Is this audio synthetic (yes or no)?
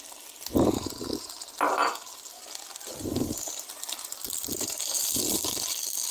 no